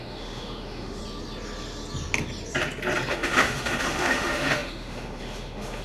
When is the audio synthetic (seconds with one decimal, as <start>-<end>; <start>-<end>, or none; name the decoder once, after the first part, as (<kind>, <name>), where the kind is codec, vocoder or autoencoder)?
0.0-1.0 (autoencoder, DAC-VAE); 3.1-5.8